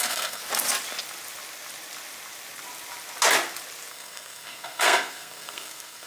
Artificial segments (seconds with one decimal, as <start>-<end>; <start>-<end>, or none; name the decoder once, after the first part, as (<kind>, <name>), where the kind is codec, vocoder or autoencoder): 0.0-0.4 (codec, SNAC); 3.9-6.1